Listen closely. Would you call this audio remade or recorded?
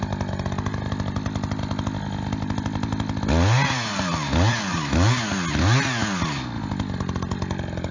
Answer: recorded